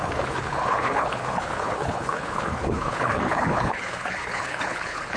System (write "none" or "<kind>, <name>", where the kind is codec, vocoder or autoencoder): codec, HILCodec